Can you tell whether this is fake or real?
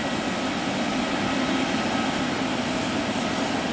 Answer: real